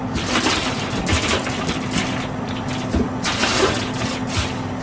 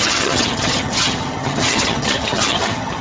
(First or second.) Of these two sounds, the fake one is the second